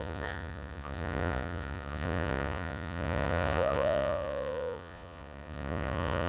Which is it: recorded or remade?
remade